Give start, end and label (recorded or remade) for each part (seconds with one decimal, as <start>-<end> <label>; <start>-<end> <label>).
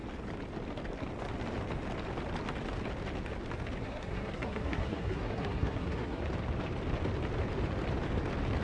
0.0-3.8 recorded; 3.8-6.2 remade; 6.2-8.6 recorded